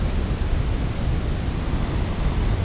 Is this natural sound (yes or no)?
no